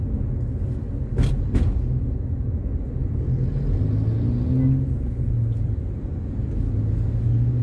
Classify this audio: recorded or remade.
recorded